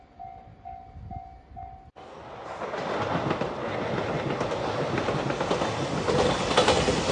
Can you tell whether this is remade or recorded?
recorded